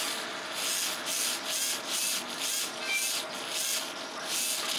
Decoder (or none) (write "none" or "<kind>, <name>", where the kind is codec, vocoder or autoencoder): none